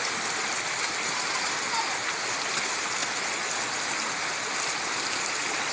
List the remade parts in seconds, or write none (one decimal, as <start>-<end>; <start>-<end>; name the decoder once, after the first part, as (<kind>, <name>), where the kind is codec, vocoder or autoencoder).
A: none